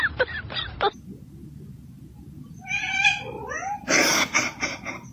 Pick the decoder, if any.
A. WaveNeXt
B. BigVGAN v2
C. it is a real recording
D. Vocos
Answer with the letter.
B